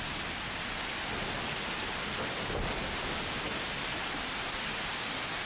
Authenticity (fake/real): real